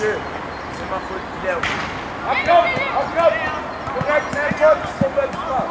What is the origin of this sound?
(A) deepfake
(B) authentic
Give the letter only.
B